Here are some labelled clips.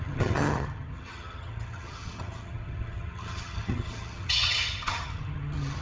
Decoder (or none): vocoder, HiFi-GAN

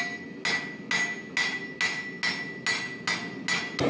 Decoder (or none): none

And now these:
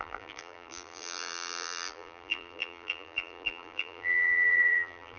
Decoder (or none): vocoder, BigVGAN v2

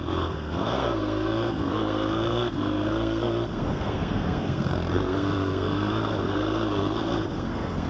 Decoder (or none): codec, SNAC